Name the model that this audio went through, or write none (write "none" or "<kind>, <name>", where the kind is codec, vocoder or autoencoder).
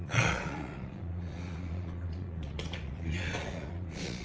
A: vocoder, Vocos